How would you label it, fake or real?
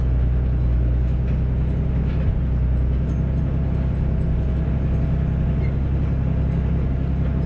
real